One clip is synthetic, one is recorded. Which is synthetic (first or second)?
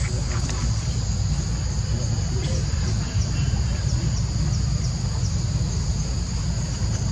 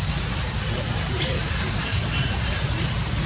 second